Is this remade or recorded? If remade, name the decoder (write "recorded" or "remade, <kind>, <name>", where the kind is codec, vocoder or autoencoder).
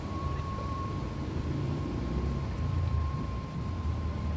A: remade, vocoder, BigVGAN v2